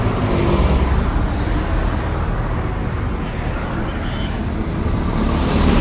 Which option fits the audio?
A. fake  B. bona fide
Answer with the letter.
B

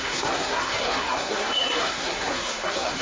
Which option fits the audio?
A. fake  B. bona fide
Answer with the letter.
A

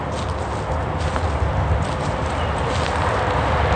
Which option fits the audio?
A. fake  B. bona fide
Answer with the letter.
B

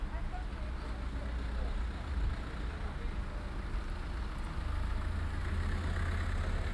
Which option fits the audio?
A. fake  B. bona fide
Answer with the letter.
B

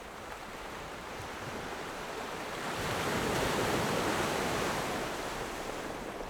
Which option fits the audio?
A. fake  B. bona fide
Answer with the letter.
A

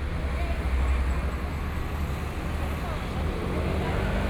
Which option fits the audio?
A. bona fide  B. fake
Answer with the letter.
A